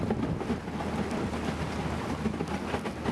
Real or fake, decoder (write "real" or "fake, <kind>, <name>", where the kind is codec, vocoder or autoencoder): real